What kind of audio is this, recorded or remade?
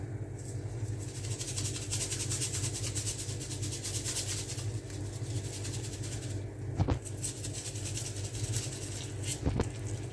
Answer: recorded